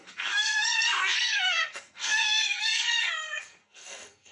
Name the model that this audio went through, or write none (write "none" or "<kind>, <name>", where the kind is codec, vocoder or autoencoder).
codec, SNAC